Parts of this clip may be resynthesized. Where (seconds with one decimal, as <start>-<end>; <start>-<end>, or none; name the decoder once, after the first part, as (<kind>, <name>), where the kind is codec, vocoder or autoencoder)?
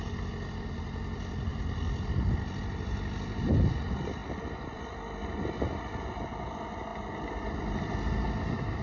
1.5-2.6 (vocoder, BigVGAN v2); 4.2-5.0; 6.9-8.4